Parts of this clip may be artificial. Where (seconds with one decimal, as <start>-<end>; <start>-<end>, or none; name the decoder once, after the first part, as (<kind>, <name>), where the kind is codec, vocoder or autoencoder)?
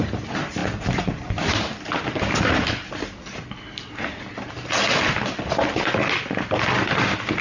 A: none